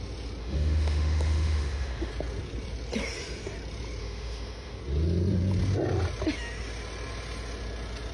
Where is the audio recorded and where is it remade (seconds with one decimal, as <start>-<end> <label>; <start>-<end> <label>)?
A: 0.0-0.4 recorded; 0.4-2.1 remade; 2.1-4.0 recorded; 4.0-4.8 remade; 4.8-8.1 recorded